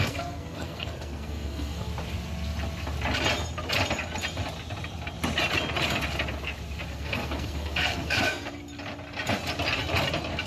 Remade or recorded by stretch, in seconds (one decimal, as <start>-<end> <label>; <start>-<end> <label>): 0.0-1.9 remade; 1.9-6.9 recorded; 6.9-8.6 remade; 8.6-10.5 recorded